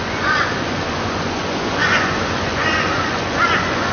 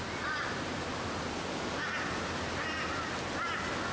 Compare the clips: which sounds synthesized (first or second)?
first